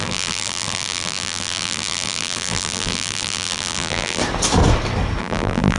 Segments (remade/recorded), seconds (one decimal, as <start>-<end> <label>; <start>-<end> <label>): 0.0-4.2 remade; 4.2-5.2 recorded; 5.2-5.8 remade